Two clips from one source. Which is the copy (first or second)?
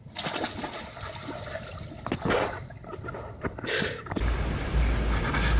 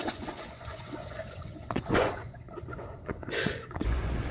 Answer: second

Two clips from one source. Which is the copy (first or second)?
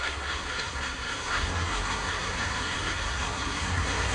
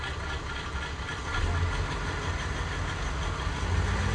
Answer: first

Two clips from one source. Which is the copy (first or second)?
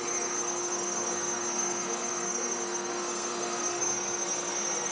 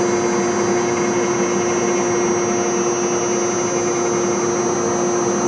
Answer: first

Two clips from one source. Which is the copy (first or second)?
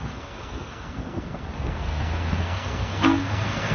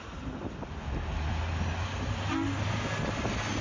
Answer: first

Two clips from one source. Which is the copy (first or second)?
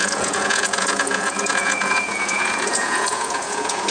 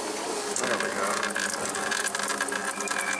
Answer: first